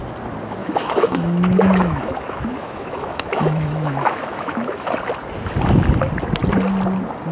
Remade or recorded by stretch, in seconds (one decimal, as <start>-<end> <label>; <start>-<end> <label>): 0.0-0.6 recorded; 0.6-4.9 remade; 4.9-7.3 recorded

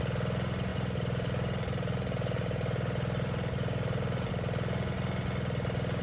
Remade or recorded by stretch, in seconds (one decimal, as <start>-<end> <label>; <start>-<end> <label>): 0.0-0.7 recorded; 0.7-4.3 remade; 4.3-6.0 recorded

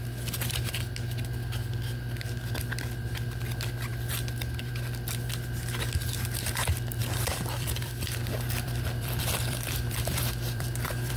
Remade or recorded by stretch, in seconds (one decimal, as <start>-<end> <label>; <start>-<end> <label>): 0.0-7.0 recorded; 7.0-11.2 remade